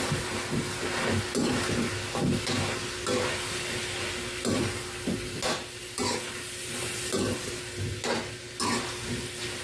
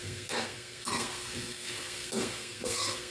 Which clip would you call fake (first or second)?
second